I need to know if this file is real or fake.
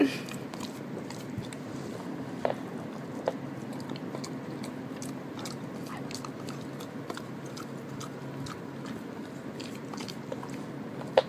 real